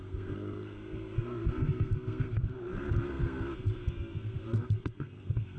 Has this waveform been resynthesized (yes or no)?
yes